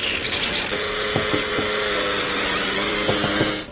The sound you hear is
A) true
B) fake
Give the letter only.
A